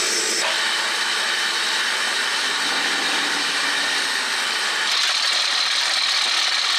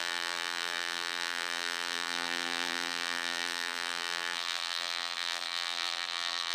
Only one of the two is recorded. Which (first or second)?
first